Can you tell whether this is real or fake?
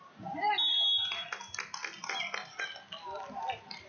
real